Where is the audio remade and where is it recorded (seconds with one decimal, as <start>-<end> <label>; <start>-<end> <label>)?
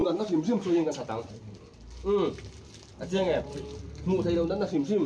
0.0-1.4 remade; 1.4-2.9 recorded; 2.9-3.6 remade; 3.6-5.1 recorded